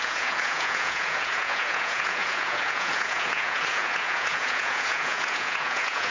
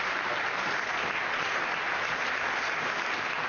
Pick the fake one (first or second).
first